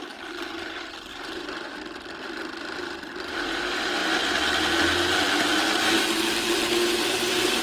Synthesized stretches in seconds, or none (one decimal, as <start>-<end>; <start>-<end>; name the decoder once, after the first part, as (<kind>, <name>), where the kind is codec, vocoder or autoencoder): 1.1-2.2 (vocoder, BigVGAN v2)